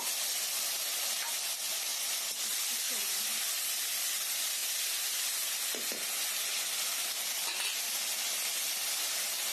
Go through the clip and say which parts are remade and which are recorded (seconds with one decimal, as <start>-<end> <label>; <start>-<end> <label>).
0.0-9.5 recorded